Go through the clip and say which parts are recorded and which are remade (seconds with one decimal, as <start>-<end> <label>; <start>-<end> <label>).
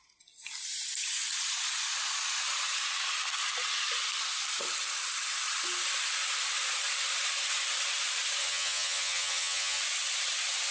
0.0-8.4 recorded; 8.4-9.8 remade; 9.8-10.7 recorded